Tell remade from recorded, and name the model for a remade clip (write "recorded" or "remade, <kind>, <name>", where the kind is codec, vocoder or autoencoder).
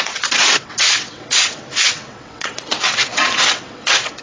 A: remade, vocoder, WaveNeXt